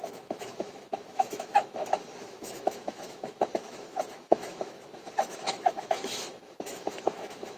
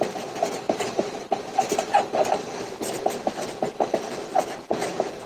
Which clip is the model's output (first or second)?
first